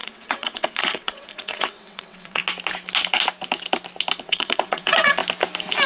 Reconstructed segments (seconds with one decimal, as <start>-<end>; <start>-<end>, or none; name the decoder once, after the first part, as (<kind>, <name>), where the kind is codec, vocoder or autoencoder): 0.0-2.4 (vocoder, WaveNeXt); 4.2-5.2